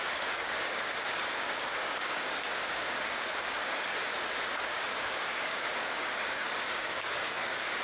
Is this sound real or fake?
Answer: fake